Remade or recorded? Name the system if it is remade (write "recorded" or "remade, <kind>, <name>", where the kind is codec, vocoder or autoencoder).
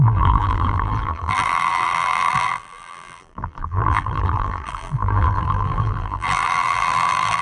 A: remade, vocoder, BigVGAN v2